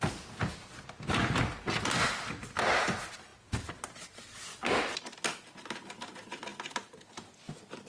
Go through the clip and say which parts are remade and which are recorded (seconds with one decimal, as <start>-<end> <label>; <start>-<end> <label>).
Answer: 0.0-7.9 recorded